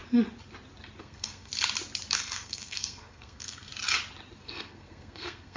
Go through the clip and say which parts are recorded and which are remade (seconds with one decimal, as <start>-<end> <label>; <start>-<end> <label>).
0.0-1.0 recorded; 1.0-1.5 remade; 1.5-2.1 recorded; 2.1-3.7 remade; 3.7-4.4 recorded; 4.4-5.6 remade